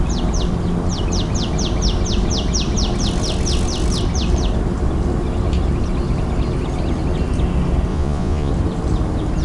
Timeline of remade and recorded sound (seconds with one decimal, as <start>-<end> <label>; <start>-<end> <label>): 0.0-7.9 recorded; 7.9-8.5 remade; 8.5-9.4 recorded